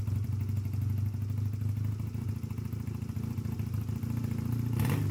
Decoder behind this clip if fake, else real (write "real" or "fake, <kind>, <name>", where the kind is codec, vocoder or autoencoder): real